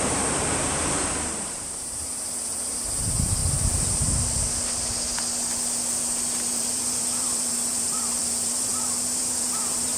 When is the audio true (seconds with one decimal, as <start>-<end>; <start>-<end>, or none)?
3.4-6.5